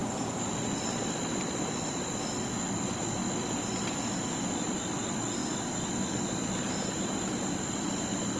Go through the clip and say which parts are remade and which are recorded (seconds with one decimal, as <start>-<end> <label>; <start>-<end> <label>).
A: 0.0-8.4 recorded